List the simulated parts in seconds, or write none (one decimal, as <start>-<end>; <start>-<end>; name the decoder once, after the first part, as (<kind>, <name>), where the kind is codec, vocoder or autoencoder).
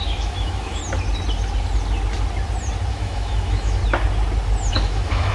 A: 0.0-0.8 (autoencoder, DAC-VAE); 2.9-3.8; 4.7-5.3